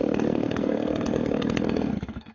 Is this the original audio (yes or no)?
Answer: no